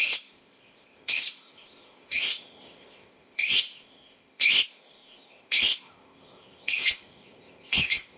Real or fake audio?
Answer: fake